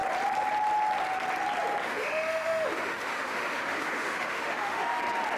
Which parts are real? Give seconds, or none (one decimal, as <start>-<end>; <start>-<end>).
0.0-1.8; 5.0-5.4